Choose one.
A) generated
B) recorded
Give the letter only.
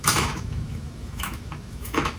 A